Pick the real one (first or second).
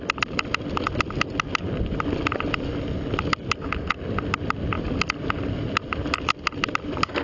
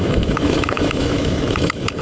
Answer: first